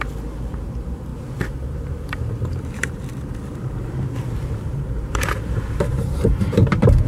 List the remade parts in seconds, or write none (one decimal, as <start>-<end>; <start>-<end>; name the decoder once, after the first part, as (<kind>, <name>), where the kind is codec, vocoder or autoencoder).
0.0-7.1 (vocoder, BigVGAN v2)